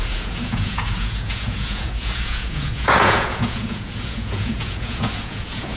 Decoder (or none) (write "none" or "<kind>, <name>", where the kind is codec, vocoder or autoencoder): vocoder, Vocos